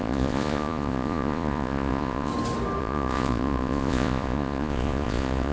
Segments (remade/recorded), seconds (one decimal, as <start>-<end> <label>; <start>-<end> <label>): 0.0-2.3 remade; 2.3-2.8 recorded; 2.8-5.5 remade